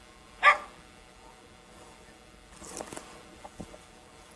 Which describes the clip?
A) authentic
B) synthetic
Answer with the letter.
A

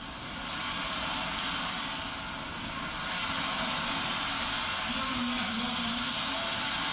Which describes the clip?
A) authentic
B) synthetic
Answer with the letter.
A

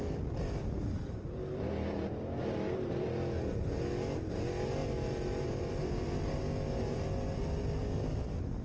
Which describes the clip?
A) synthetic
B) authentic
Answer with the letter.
B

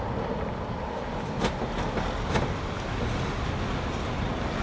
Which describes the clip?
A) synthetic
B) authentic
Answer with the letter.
B